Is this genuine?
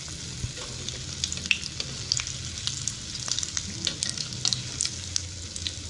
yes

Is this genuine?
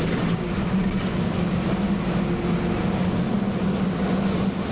yes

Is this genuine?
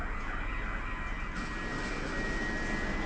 yes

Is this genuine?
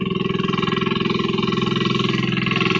yes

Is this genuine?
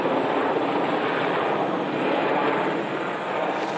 yes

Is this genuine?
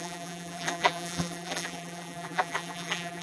no